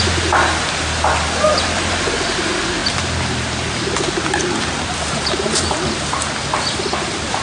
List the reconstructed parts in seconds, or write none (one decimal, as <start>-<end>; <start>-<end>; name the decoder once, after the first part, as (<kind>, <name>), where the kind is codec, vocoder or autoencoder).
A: none